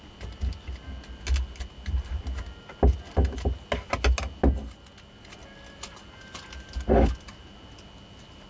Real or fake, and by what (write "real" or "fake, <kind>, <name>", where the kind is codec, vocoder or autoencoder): real